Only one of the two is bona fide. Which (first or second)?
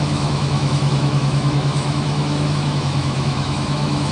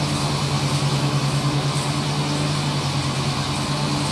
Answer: second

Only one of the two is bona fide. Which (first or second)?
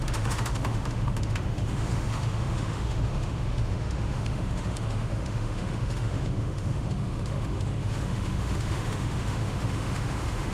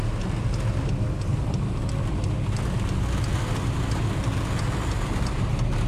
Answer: second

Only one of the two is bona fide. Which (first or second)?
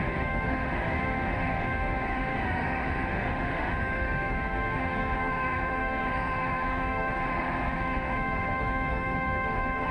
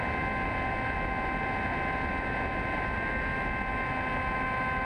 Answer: second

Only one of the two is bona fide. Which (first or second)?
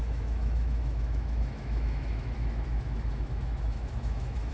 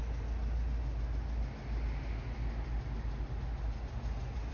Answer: second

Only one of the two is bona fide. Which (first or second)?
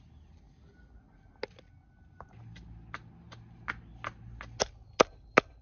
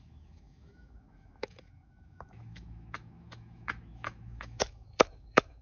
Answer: first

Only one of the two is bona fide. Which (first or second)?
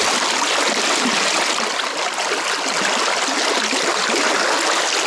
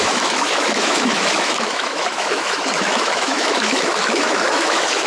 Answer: first